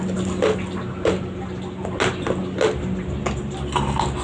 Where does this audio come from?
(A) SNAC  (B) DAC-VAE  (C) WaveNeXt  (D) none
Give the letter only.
D